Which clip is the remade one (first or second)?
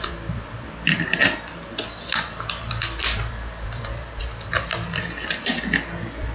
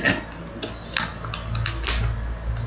first